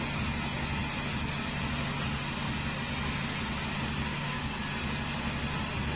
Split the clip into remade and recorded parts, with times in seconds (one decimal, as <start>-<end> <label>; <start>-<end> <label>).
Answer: 0.0-4.1 recorded; 4.1-4.6 remade; 4.6-6.0 recorded